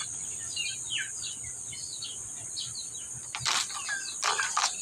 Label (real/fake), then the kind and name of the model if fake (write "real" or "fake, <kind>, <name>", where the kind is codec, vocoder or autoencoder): real